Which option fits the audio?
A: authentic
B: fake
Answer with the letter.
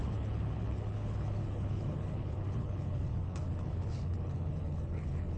B